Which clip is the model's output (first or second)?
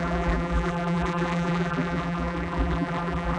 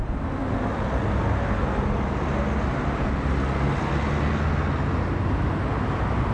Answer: first